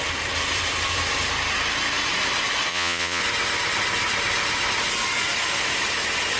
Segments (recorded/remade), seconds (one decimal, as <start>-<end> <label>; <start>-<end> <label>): 0.0-2.7 recorded; 2.7-3.2 remade; 3.2-6.4 recorded